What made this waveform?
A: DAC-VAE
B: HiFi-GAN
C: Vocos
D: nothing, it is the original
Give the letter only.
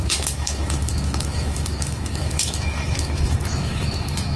A